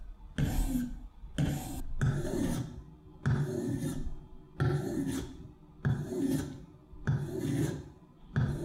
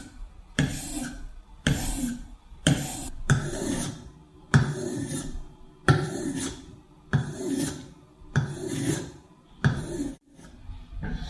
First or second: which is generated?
second